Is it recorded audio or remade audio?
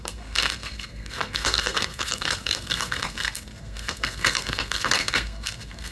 remade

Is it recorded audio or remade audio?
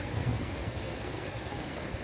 remade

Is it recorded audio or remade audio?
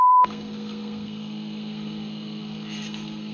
remade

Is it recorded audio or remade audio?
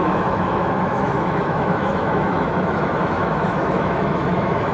remade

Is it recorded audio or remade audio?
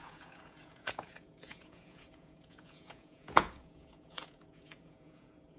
remade